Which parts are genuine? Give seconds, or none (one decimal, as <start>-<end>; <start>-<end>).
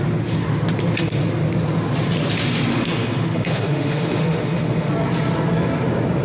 0.0-2.7; 4.9-6.2